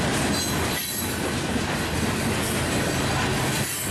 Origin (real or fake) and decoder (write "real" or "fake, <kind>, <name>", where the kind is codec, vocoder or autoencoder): real